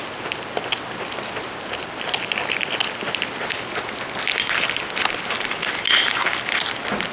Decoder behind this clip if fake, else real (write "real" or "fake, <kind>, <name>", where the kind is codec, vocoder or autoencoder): real